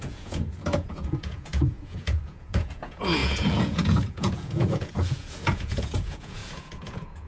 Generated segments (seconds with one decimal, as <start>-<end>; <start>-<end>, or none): 0.0-7.3